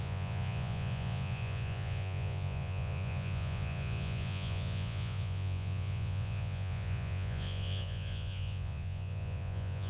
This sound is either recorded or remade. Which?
remade